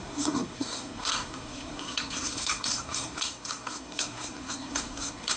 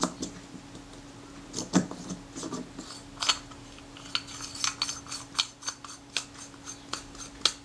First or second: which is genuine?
second